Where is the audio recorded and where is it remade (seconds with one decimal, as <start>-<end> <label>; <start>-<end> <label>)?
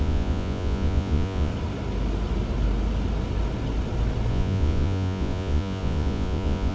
0.0-1.5 remade; 1.5-4.3 recorded; 4.3-6.7 remade